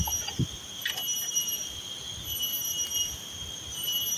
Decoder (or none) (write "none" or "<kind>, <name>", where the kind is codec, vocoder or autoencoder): none